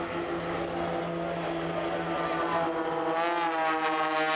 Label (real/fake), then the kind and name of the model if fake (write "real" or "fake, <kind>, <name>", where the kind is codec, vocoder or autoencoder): real